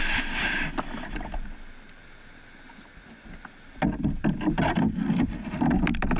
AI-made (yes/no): no